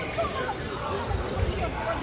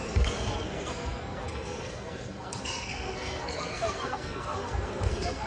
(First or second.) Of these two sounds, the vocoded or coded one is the second